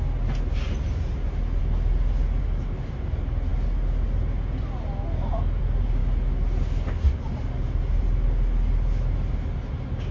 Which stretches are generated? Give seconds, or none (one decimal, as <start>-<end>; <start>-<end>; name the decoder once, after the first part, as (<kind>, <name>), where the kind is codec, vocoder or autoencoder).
none